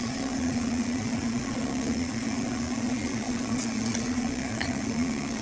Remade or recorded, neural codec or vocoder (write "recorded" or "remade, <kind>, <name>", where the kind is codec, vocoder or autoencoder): remade, vocoder, Vocos